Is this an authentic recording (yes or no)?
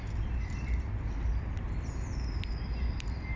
yes